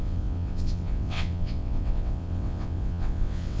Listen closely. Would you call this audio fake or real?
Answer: fake